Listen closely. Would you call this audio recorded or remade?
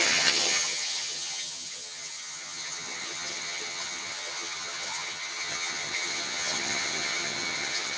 remade